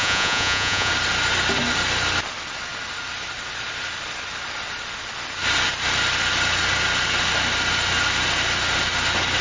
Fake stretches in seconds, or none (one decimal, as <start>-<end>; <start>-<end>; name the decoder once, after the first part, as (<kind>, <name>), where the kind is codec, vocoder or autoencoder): 0.0-0.9 (vocoder, Vocos)

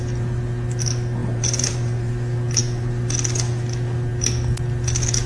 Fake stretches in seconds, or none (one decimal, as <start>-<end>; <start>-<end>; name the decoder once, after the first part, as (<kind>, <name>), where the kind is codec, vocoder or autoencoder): 1.2-2.1 (vocoder, BigVGAN v2)

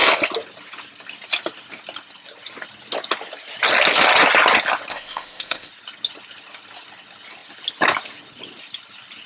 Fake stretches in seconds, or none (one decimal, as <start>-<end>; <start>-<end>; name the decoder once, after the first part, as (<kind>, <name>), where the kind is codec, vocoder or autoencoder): 4.9-5.7 (codec, ZipCodec)

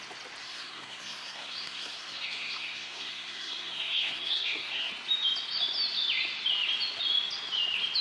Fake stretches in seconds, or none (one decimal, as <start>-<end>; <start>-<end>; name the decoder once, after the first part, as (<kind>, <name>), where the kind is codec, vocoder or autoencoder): 0.4-4.9 (codec, SNAC)

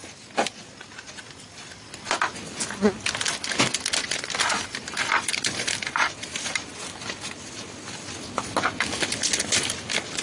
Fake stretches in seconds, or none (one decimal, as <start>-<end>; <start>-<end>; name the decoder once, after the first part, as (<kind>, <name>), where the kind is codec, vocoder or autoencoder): 5.3-6.7 (vocoder, BigVGAN v2)

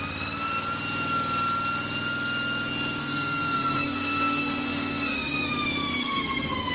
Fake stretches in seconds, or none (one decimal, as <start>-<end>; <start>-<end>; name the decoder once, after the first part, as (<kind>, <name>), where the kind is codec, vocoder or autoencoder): 3.0-5.5 (codec, SNAC); 6.0-6.7